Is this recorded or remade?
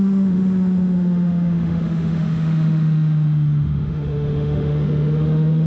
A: remade